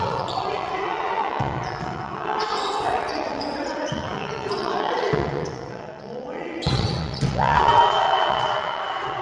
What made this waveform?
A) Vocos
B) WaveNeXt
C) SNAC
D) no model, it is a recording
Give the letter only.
B